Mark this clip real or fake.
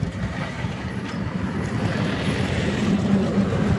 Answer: fake